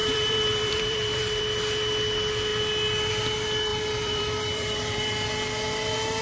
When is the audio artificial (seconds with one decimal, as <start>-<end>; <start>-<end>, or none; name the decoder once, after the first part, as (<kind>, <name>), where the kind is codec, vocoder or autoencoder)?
0.0-1.4 (vocoder, BigVGAN v2); 3.7-5.1